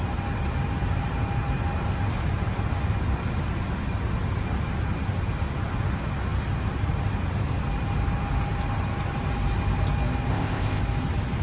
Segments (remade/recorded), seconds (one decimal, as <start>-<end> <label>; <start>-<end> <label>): 0.0-10.3 recorded; 10.3-10.8 remade; 10.8-11.4 recorded